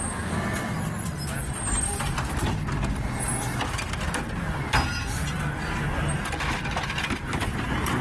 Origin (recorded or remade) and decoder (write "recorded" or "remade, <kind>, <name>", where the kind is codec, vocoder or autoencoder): recorded